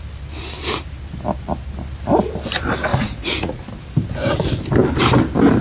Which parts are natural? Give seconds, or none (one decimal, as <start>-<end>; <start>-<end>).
0.0-2.9; 3.6-5.6